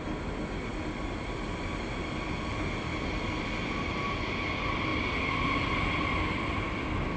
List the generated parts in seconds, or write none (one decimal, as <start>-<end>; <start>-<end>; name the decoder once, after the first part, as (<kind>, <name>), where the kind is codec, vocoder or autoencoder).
none

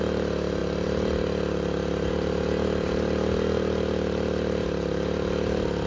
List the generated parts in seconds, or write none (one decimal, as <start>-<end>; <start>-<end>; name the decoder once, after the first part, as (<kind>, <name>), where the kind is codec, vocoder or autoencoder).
none

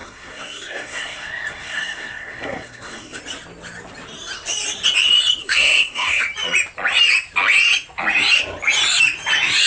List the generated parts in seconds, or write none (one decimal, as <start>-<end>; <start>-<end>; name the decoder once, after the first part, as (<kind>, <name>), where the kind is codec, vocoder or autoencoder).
0.0-3.2 (codec, SNAC); 5.4-6.2